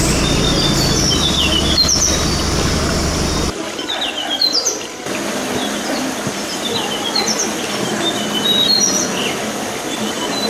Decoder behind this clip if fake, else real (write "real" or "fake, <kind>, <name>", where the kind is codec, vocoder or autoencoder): real